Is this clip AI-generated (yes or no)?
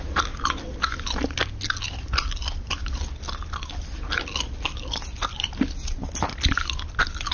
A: no